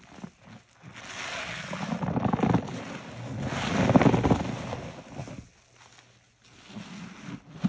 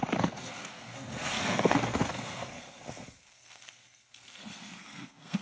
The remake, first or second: second